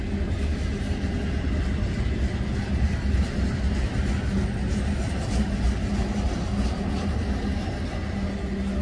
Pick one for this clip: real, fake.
real